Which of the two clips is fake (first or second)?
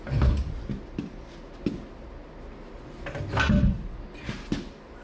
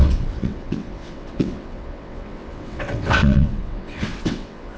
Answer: second